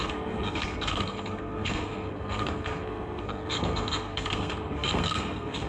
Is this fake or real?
fake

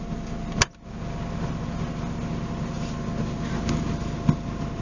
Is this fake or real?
real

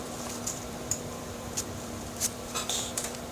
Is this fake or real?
fake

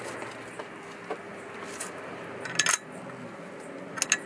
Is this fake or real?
real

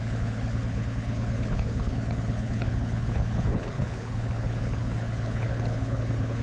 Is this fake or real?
fake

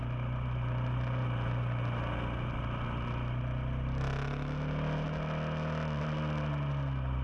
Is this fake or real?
real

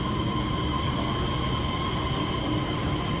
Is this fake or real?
real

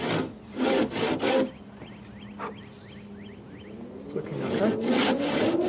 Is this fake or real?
real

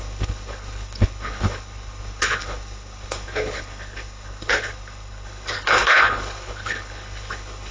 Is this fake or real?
fake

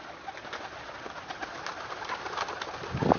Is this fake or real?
real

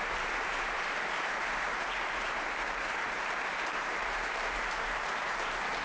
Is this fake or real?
fake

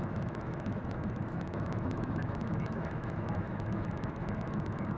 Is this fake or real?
fake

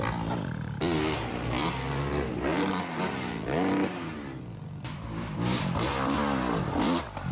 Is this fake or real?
real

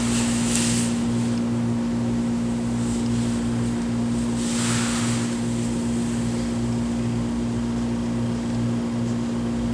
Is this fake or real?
real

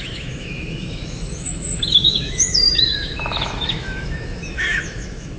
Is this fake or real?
fake